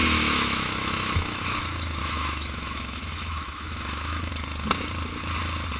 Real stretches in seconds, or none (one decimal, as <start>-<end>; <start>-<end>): 1.4-2.0; 4.3-5.8